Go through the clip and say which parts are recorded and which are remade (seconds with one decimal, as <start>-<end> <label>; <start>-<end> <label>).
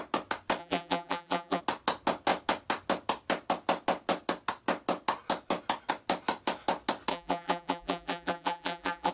0.0-0.6 recorded; 0.6-1.6 remade; 1.6-7.1 recorded; 7.1-9.1 remade